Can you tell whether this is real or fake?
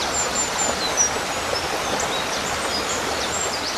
real